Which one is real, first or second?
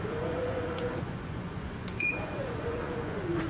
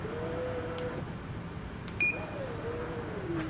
second